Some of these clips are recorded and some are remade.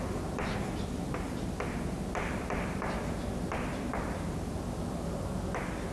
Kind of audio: recorded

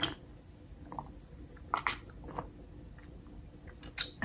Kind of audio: recorded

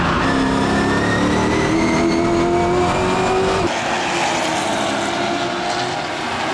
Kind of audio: recorded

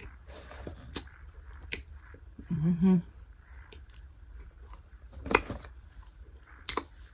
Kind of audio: remade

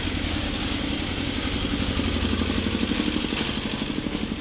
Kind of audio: recorded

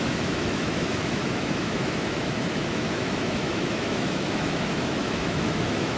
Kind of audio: remade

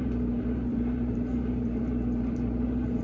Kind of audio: remade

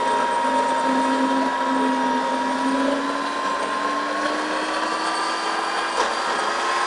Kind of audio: recorded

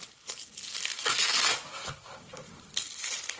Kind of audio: recorded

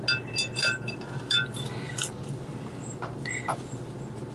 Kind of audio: recorded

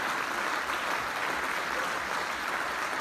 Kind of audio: recorded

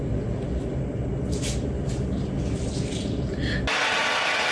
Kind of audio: recorded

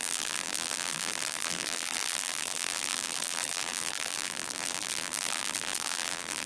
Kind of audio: remade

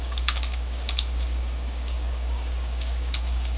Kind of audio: remade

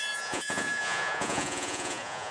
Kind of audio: remade